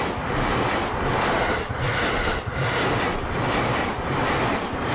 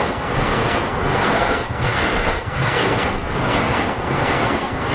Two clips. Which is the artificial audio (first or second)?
second